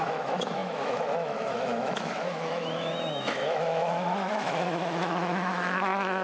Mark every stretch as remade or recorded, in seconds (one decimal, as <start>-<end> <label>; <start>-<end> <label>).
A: 0.0-6.2 remade